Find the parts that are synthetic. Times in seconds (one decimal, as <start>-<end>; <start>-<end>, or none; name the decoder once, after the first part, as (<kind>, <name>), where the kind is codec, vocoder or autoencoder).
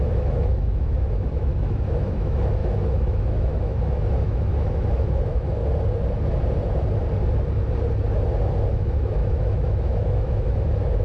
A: 0.0-5.6 (autoencoder, DAC-VAE); 8.7-11.0